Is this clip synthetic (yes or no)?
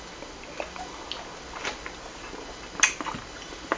no